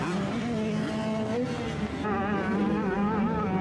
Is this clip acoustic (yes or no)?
yes